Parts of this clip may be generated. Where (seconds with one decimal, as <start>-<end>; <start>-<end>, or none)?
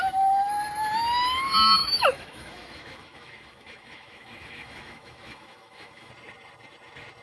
1.8-6.1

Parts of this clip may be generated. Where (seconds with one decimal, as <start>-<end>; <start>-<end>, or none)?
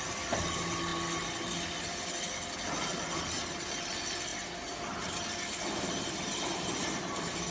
none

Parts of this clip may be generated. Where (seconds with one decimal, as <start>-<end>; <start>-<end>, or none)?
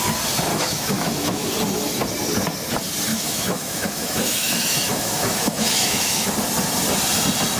0.5-1.5; 3.1-6.3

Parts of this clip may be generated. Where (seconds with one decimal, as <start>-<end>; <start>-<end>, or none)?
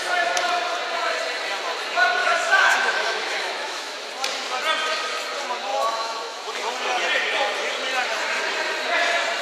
2.2-4.1; 5.7-6.5